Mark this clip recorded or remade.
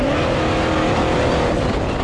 recorded